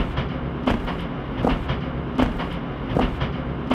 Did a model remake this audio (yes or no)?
no